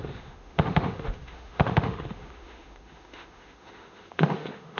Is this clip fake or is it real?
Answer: fake